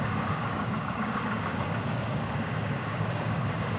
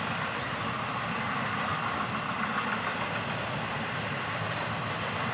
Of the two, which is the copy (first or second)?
first